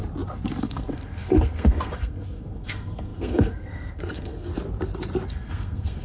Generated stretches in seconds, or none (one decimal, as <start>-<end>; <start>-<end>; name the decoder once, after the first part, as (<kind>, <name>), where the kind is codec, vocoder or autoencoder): 0.6-4.5 (codec, SNAC); 5.3-6.0